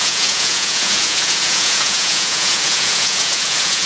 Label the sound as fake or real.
fake